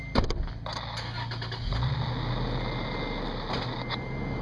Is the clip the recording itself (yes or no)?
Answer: yes